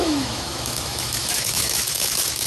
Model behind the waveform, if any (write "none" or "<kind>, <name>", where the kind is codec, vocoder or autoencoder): autoencoder, DAC-VAE